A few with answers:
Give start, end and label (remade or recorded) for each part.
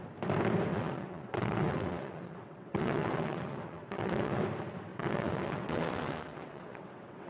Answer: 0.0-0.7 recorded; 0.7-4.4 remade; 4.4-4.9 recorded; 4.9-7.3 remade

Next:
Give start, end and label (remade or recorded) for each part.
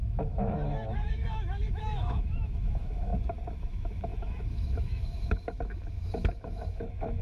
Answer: 0.0-3.1 remade; 3.1-3.6 recorded; 3.6-7.2 remade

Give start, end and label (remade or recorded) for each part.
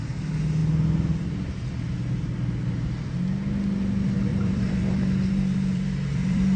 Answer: 0.0-4.3 recorded; 4.3-6.6 remade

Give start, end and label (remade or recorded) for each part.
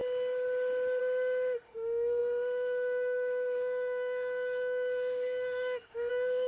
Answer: 0.0-1.0 recorded; 1.0-6.5 remade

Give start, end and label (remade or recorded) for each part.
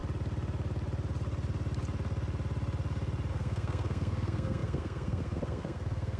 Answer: 0.0-3.3 recorded; 3.3-6.2 remade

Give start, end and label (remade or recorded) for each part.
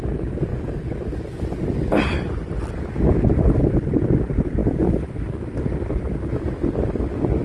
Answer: 0.0-7.4 recorded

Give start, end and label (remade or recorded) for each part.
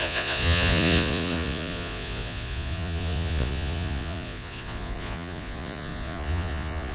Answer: 0.0-6.9 remade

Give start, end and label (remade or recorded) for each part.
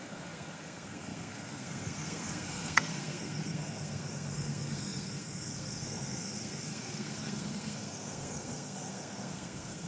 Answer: 0.0-9.9 remade